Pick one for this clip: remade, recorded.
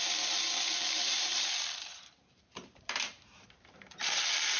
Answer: remade